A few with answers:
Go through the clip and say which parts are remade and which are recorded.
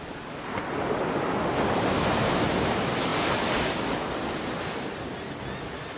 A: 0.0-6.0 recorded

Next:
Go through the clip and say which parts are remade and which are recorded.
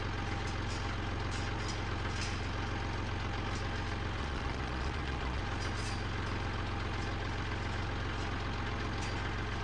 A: 0.0-4.2 recorded; 4.2-5.4 remade; 5.4-9.6 recorded